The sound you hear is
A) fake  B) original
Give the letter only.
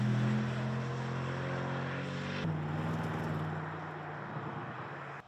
B